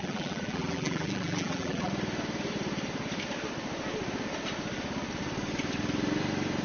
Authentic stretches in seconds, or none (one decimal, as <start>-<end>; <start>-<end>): 1.9-6.6